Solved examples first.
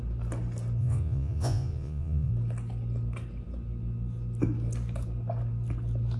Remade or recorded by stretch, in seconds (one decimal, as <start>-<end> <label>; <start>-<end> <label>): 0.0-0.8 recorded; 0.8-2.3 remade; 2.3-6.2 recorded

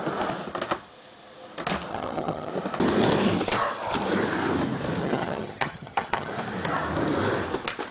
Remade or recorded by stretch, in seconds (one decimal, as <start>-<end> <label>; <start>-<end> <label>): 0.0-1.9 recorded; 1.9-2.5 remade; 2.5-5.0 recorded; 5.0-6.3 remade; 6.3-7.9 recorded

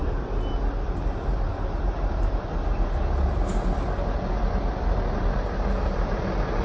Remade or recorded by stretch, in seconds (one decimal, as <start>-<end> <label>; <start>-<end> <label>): 0.0-6.6 recorded

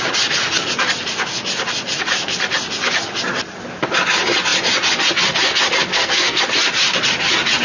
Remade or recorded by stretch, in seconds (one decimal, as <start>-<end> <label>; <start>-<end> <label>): 0.0-5.9 recorded; 5.9-6.4 remade; 6.4-7.6 recorded